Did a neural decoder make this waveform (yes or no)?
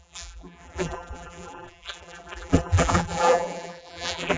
yes